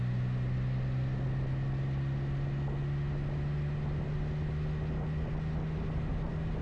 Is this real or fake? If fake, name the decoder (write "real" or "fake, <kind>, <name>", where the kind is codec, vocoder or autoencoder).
real